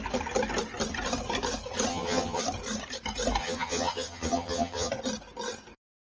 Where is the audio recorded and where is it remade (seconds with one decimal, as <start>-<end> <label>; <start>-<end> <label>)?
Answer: 0.0-1.9 recorded; 1.9-2.4 remade; 2.4-3.4 recorded; 3.4-4.9 remade; 4.9-6.0 recorded